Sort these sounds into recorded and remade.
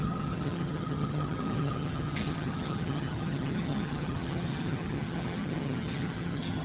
remade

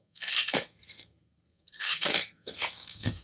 remade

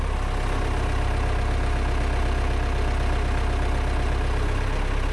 recorded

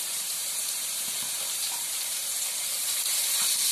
remade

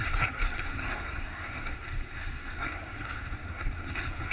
remade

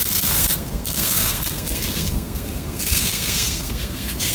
remade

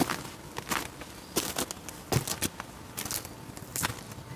recorded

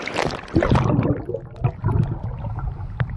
recorded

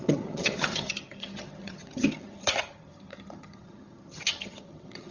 remade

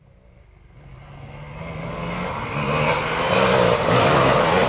recorded